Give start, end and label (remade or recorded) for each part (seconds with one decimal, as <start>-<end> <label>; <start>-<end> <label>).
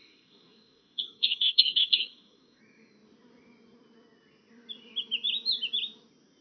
0.0-2.6 remade; 2.6-6.4 recorded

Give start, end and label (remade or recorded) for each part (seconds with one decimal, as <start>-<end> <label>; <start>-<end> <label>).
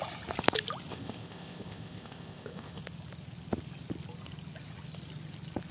0.0-0.9 recorded; 0.9-2.8 remade; 2.8-5.7 recorded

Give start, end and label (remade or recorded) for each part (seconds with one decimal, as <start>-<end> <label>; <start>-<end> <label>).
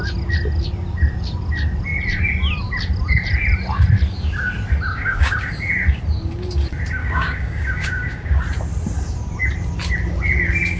0.0-4.9 recorded; 4.9-5.5 remade; 5.5-7.0 recorded; 7.0-8.4 remade; 8.4-10.8 recorded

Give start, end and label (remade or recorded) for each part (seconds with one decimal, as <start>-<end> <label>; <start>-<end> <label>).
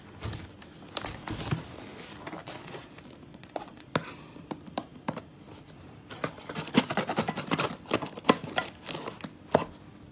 0.0-2.4 recorded; 2.4-2.9 remade; 2.9-3.3 recorded; 3.3-3.9 remade; 3.9-10.1 recorded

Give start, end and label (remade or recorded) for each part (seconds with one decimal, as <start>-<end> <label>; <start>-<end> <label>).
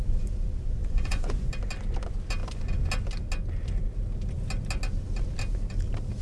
0.0-0.8 recorded; 0.8-1.5 remade; 1.5-6.2 recorded